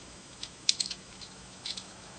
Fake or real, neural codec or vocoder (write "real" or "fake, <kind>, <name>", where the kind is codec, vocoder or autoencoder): fake, autoencoder, DAC-VAE